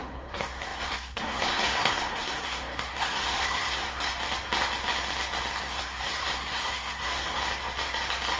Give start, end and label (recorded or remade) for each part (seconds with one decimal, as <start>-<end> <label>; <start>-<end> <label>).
0.0-4.1 remade; 4.1-5.6 recorded; 5.6-7.4 remade; 7.4-8.4 recorded